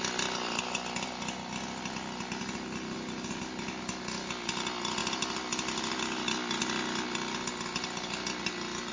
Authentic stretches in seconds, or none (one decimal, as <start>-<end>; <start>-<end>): 0.0-8.9